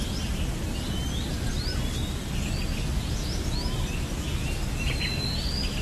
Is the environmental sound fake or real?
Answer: real